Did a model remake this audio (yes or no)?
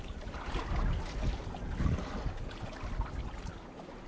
no